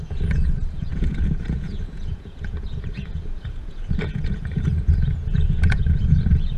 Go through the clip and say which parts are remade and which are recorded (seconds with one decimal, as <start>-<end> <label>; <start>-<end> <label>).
0.0-6.6 remade

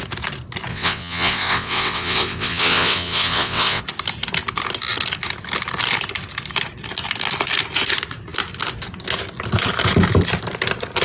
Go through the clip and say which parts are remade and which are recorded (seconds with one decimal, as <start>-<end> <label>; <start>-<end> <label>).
0.0-0.7 recorded; 0.7-3.8 remade; 3.8-11.0 recorded

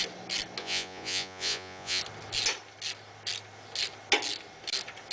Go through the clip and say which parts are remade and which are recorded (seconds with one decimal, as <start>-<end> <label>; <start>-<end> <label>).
0.0-0.6 recorded; 0.6-2.0 remade; 2.0-5.1 recorded

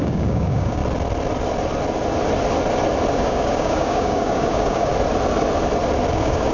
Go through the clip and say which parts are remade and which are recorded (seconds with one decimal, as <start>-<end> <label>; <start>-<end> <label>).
0.0-0.8 remade; 0.8-3.1 recorded; 3.1-4.9 remade; 4.9-6.1 recorded; 6.1-6.5 remade